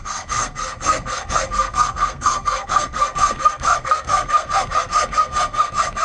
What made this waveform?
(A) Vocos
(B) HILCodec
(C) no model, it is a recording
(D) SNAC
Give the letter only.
D